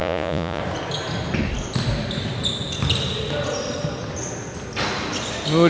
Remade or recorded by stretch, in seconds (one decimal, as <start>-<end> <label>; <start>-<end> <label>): 0.0-0.6 remade; 0.6-5.7 recorded